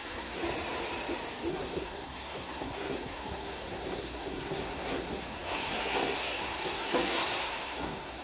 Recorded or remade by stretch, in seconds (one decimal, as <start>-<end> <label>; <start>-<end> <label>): 0.0-0.4 remade; 0.4-1.5 recorded; 1.5-8.2 remade